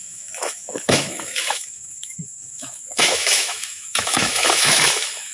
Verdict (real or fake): fake